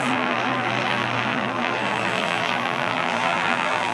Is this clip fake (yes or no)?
yes